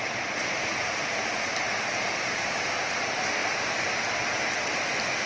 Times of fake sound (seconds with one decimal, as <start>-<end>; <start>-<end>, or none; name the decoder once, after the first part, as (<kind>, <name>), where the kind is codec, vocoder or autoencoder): 1.9-2.9 (vocoder, BigVGAN v2); 3.4-3.9